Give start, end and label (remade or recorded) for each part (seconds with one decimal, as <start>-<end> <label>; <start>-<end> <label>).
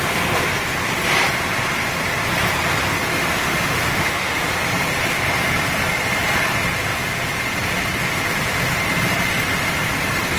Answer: 0.0-3.1 recorded; 3.1-4.5 remade; 4.5-10.4 recorded